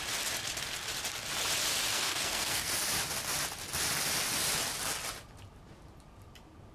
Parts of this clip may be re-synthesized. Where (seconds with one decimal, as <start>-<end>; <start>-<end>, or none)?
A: 1.9-2.7